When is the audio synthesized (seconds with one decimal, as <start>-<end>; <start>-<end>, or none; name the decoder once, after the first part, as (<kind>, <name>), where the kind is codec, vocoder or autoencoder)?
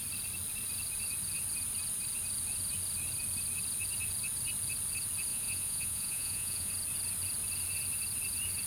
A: 5.3-6.7 (vocoder, Vocos)